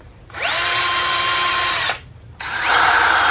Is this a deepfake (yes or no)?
yes